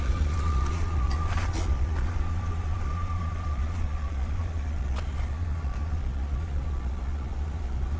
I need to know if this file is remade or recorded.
remade